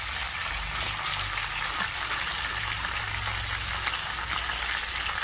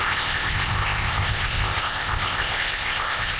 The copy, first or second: second